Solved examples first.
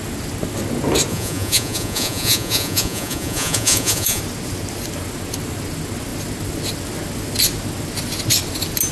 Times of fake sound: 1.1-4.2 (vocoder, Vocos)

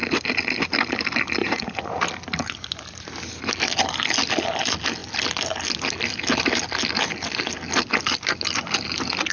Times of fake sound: 1.4-2.0 (vocoder, Vocos)

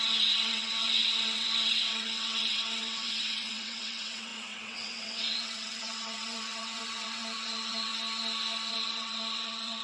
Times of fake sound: 0.0-7.9 (vocoder, WaveNeXt); 8.7-9.8

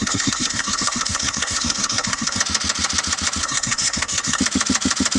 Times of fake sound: 0.0-2.4 (codec, SNAC); 3.4-4.4

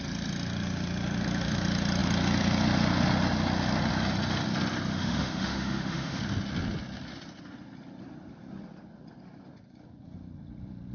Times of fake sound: 4.9-6.2 (autoencoder, DAC-VAE)

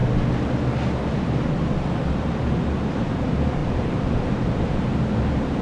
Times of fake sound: 3.6-5.6 (vocoder, BigVGAN v2)

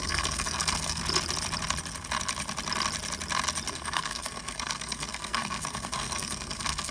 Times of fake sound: 0.0-1.0 (codec, SNAC); 3.7-6.9

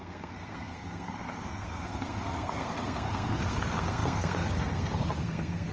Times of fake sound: 0.0-5.7 (codec, SNAC)